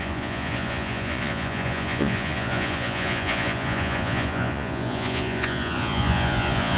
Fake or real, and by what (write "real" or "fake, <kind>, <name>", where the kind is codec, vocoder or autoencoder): fake, vocoder, Vocos